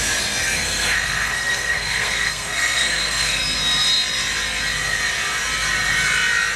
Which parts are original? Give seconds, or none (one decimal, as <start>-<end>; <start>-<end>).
0.0-0.4; 3.4-6.6

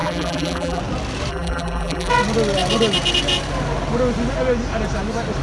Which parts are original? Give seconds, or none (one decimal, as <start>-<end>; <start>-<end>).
0.8-1.3; 2.1-5.4

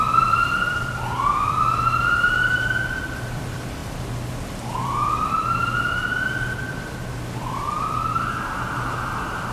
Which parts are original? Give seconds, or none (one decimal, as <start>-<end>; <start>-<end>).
none

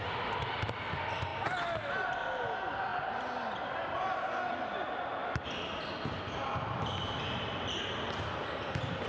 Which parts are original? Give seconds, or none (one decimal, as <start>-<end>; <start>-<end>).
0.0-2.9; 3.4-5.2; 5.7-9.1

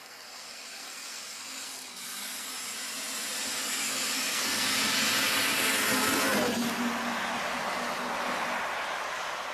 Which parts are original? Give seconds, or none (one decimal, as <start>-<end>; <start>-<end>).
2.5-3.6; 4.7-9.5

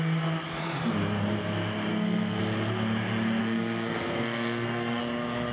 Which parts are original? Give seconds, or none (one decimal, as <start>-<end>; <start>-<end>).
0.0-1.9; 2.4-3.4; 5.0-5.5

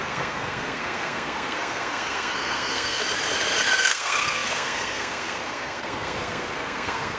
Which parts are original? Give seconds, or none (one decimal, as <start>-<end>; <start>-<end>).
3.0-3.8

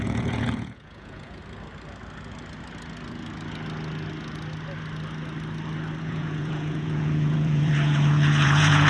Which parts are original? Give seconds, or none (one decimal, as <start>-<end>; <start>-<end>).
1.4-6.0